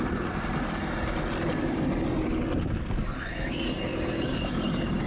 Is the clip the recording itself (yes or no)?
yes